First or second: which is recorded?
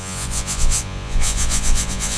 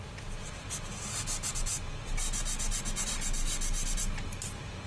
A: second